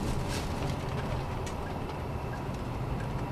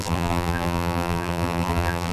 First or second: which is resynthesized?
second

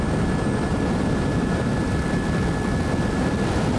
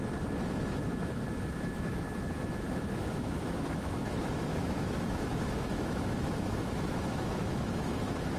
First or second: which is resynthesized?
second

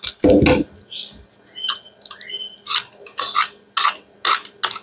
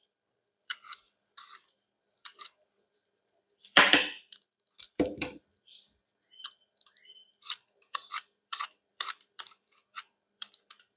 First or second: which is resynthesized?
second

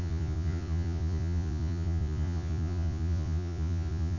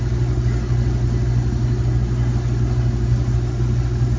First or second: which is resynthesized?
first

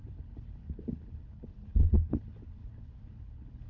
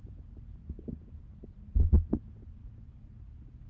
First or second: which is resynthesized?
first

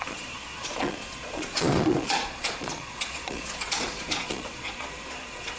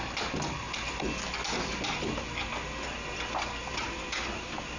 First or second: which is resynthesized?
first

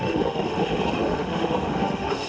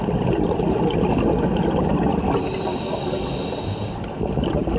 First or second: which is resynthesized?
first